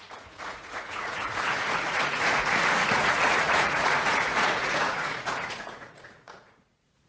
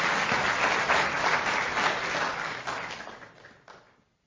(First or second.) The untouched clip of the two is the second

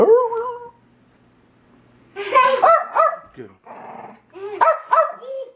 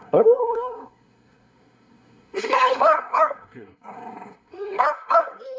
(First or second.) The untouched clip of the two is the first